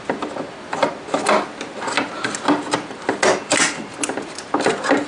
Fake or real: real